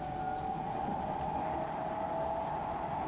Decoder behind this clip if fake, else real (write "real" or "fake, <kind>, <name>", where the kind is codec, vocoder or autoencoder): real